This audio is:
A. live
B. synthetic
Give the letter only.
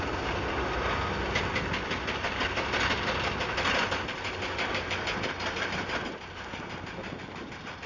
A